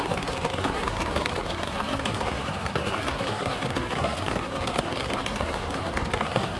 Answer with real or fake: fake